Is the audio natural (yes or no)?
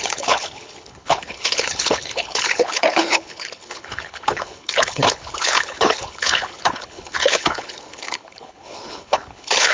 no